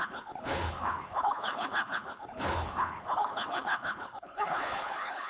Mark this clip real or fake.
fake